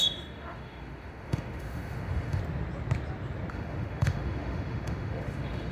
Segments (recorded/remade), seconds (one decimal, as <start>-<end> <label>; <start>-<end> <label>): 0.0-2.4 remade; 2.4-3.5 recorded; 3.5-5.7 remade